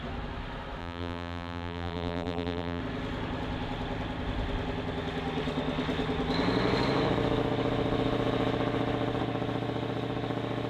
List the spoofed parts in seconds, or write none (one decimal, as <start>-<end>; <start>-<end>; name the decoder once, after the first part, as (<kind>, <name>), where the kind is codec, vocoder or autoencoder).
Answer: 0.8-2.8 (vocoder, BigVGAN v2)